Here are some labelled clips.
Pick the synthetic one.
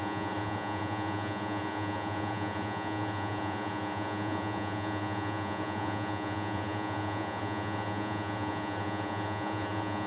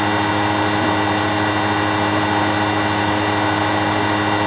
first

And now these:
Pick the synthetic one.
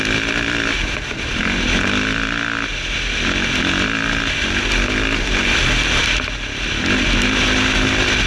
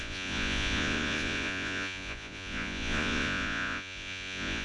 second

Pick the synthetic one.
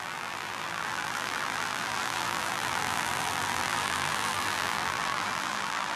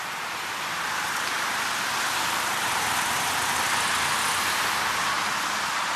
first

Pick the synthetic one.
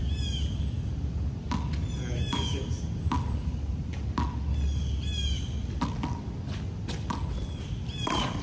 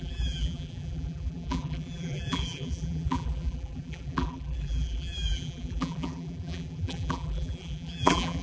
second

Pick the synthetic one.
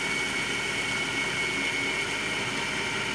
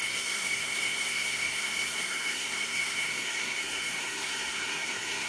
second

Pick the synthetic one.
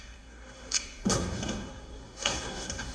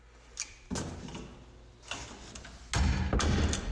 first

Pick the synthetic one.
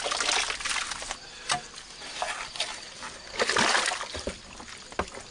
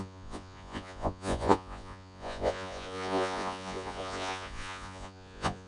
second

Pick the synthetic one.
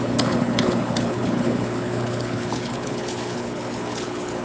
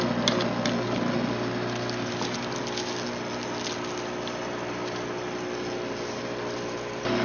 first